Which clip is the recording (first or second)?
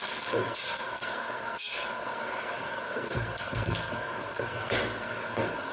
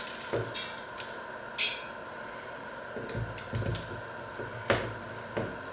second